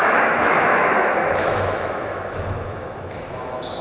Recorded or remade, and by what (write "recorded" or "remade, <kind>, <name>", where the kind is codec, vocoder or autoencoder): remade, autoencoder, DAC-VAE